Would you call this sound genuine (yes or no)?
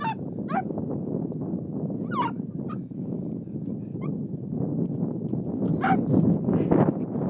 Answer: yes